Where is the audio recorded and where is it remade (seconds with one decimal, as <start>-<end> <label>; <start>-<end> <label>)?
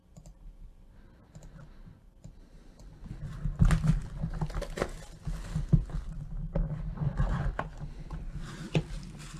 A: 0.0-9.4 recorded